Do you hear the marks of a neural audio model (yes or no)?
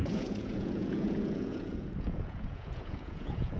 yes